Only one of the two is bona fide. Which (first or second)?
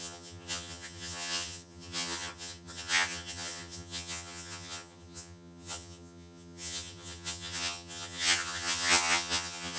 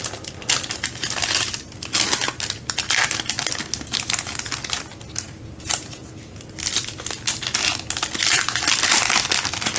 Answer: second